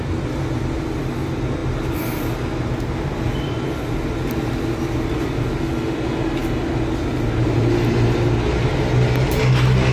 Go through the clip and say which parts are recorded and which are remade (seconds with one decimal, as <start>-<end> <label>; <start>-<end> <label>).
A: 0.0-9.9 recorded